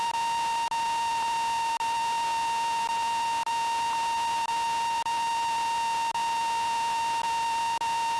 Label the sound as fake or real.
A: real